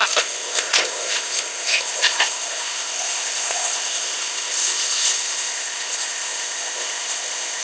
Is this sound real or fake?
fake